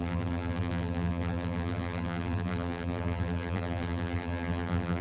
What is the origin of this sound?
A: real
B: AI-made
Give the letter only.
B